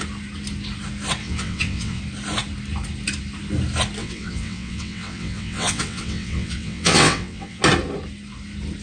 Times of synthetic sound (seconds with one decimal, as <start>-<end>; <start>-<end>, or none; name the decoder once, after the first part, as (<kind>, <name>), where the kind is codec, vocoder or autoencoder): 1.2-2.0 (vocoder, WaveNeXt); 4.0-7.6